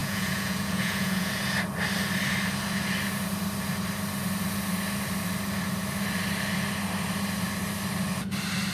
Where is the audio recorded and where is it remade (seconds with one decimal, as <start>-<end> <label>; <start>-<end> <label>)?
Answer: 0.0-1.3 remade; 1.3-8.7 recorded